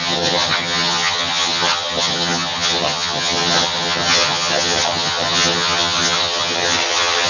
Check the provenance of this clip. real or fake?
fake